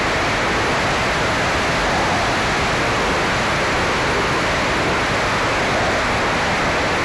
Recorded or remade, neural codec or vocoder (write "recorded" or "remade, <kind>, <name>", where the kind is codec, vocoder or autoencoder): recorded